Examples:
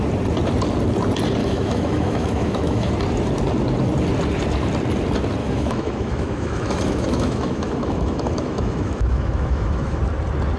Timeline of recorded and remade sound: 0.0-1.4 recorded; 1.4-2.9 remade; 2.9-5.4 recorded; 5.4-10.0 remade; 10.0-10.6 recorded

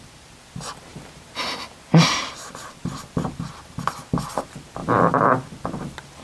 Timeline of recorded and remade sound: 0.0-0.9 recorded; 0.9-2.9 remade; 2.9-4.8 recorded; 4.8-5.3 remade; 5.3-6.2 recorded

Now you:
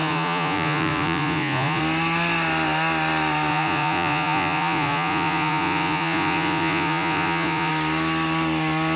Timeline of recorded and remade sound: 0.0-1.8 remade; 1.8-3.5 recorded; 3.5-7.7 remade; 7.7-9.0 recorded

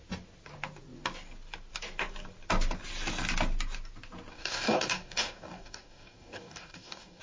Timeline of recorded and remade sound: 0.0-4.3 recorded; 4.3-7.2 remade